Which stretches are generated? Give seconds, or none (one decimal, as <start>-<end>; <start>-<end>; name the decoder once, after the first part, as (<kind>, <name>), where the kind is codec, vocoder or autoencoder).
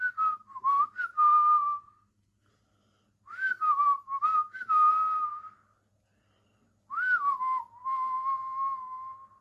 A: 1.3-2.5 (codec, SNAC)